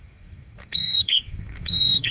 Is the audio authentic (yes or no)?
no